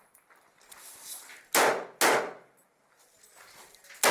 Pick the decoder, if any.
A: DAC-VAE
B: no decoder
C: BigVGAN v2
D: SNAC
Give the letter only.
B